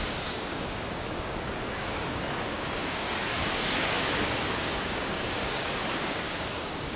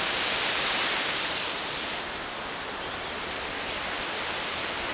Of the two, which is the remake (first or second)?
first